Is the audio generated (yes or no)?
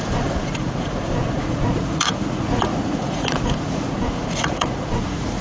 yes